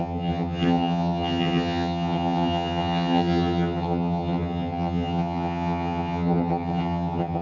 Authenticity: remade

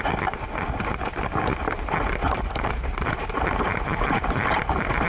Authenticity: recorded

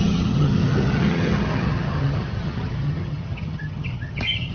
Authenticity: remade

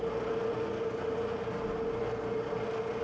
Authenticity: recorded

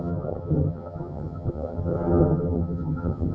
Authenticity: remade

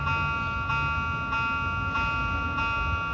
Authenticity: recorded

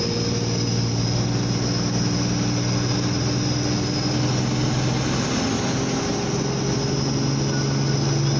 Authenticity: recorded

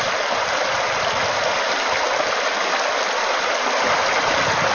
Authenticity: recorded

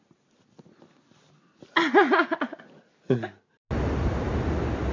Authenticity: recorded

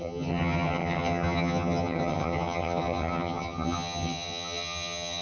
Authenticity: remade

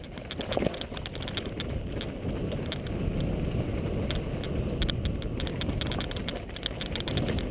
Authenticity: recorded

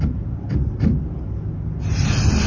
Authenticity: recorded